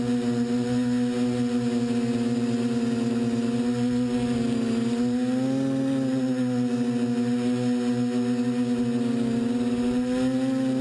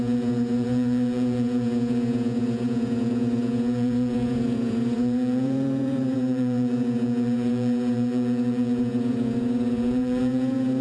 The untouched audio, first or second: first